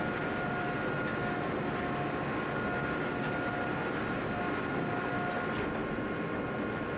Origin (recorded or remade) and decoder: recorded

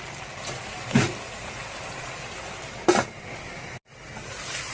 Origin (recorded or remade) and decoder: recorded